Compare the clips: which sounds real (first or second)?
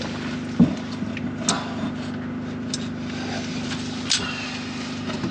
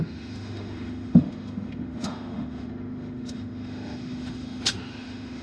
first